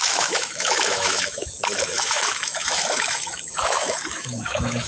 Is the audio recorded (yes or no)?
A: no